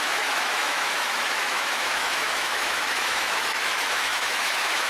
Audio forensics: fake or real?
fake